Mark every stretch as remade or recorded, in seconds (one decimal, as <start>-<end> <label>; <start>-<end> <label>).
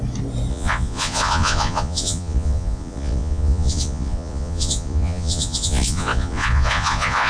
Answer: 0.0-0.5 recorded; 0.5-7.3 remade